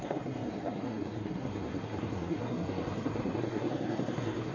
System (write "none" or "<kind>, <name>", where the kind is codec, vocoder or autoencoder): codec, SNAC